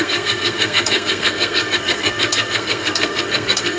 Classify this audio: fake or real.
fake